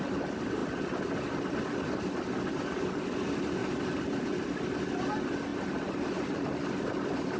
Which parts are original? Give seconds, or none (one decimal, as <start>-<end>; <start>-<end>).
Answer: 0.0-3.6; 4.3-7.4